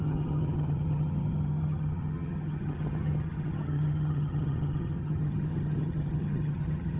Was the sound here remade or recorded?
remade